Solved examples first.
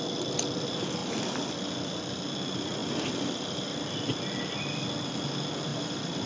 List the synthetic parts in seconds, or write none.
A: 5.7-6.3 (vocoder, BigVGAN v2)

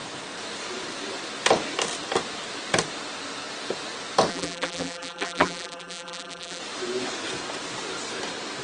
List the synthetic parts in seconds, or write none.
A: 4.3-6.6 (vocoder, BigVGAN v2)

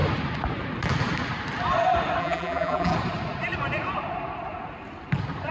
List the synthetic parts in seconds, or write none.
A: 2.2-2.9 (vocoder, BigVGAN v2)

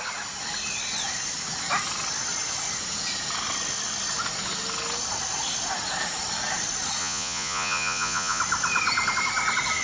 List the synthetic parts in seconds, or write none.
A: 7.0-8.4 (vocoder, Vocos)

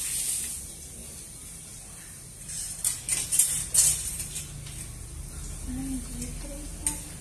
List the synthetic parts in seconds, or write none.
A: none